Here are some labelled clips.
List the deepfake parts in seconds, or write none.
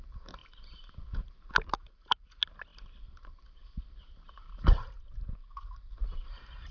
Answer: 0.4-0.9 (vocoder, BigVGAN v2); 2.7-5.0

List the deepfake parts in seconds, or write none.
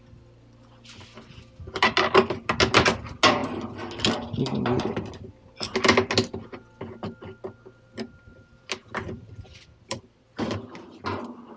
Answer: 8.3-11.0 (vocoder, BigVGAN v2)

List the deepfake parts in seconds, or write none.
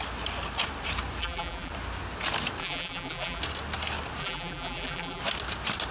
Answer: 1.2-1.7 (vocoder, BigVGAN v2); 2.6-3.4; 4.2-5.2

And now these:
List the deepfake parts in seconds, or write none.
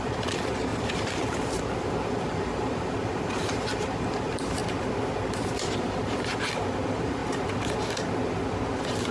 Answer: 0.0-4.6 (vocoder, BigVGAN v2); 5.5-7.2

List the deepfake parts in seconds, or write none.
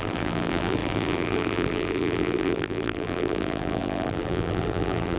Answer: 0.0-5.2 (vocoder, BigVGAN v2)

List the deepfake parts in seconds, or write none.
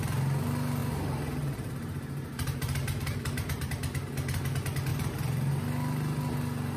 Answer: 0.8-3.7 (vocoder, BigVGAN v2); 4.9-5.5